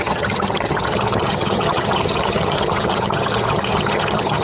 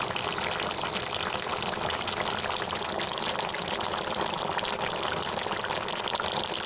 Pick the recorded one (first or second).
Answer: second